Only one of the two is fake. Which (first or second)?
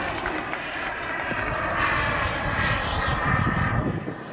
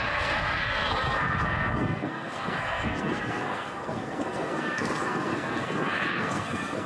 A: second